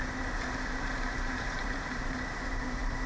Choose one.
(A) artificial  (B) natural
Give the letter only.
A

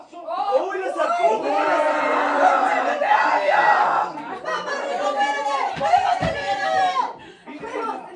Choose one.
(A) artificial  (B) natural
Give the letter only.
A